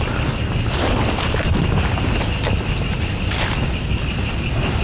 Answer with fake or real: real